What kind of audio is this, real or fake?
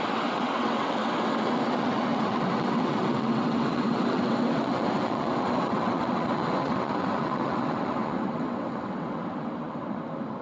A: fake